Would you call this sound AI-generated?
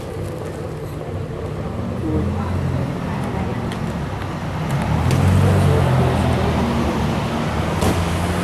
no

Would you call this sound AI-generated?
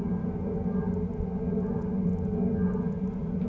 no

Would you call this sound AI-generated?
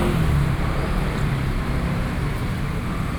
no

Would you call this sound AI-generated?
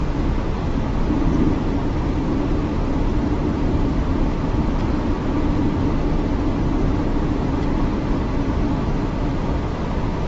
no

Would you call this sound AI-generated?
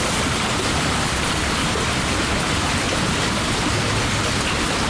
no